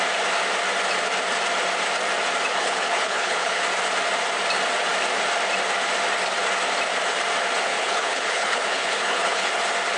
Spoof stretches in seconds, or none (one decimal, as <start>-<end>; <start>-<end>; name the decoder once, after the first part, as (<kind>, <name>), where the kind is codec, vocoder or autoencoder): 2.5-3.6 (codec, HILCodec); 7.7-9.5